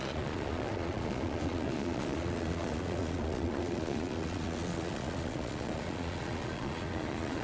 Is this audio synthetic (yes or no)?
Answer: yes